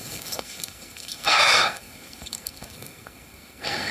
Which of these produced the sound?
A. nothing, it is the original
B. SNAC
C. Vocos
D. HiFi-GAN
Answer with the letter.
B